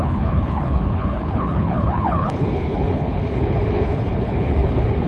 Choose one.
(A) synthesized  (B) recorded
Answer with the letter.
A